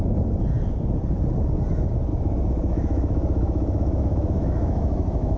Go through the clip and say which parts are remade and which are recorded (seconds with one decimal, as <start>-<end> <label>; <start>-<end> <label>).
0.0-2.1 recorded; 2.1-5.4 remade